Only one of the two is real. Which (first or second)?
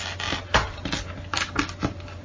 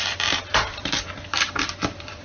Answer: first